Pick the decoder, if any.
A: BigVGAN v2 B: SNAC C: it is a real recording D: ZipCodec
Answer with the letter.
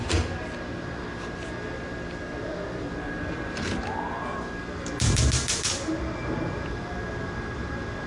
C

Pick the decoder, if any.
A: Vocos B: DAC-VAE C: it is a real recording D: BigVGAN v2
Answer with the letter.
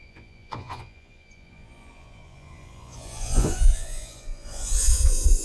A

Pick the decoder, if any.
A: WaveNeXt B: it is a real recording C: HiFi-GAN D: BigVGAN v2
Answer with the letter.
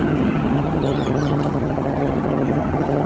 C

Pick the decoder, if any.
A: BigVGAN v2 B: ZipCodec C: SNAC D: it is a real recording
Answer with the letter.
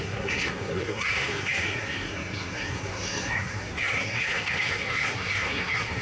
C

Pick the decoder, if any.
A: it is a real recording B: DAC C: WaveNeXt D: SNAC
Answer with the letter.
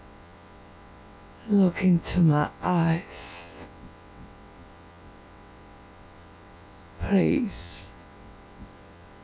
C